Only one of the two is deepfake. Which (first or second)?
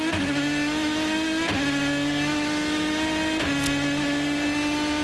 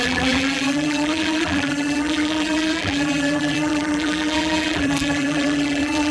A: second